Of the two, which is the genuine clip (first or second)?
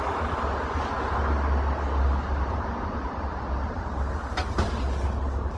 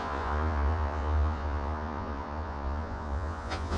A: first